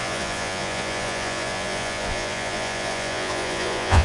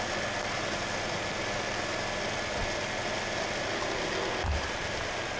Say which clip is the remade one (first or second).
first